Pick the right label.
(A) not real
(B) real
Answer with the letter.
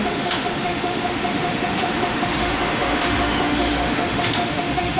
A